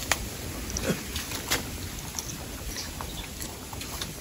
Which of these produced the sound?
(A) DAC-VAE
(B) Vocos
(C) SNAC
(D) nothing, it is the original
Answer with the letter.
D